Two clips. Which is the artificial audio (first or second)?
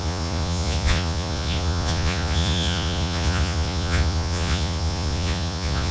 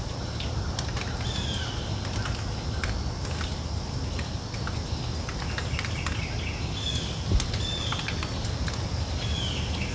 first